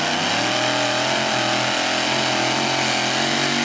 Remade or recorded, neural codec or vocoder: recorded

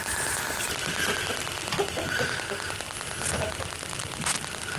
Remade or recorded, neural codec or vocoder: recorded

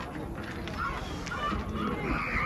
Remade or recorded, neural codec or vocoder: recorded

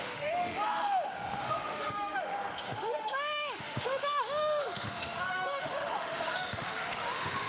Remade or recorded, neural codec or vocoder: remade, autoencoder, DAC-VAE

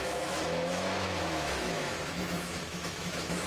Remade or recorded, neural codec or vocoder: remade, autoencoder, DAC-VAE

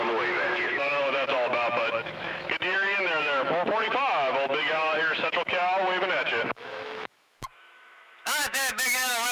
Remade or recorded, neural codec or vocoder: remade, autoencoder, DAC-VAE